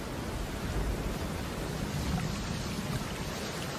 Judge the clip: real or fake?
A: real